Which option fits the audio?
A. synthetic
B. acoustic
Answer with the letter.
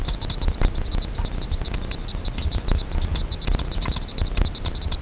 B